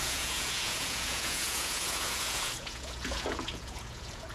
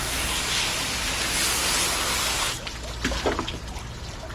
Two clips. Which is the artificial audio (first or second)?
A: first